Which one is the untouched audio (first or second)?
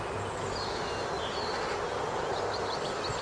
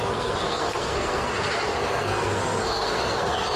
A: first